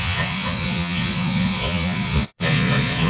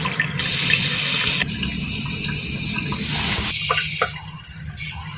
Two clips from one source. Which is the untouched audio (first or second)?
second